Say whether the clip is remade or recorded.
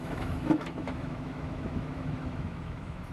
remade